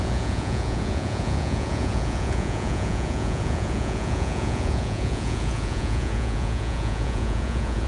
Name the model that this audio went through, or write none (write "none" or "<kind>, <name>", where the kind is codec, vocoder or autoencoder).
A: vocoder, Vocos